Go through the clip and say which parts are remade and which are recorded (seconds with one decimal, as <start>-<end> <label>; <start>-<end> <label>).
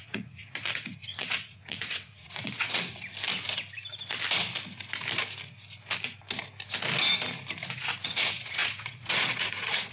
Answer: 0.0-3.1 remade; 3.1-7.7 recorded; 7.7-9.9 remade